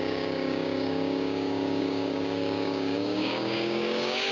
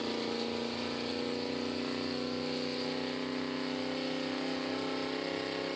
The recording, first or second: second